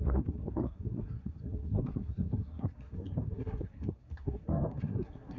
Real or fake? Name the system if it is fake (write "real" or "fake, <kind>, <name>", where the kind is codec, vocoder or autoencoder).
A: fake, codec, SNAC